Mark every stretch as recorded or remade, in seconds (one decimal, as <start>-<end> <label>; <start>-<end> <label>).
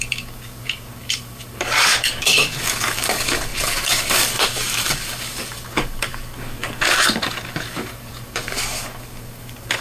0.0-9.8 remade